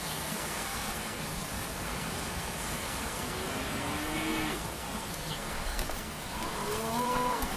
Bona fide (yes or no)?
no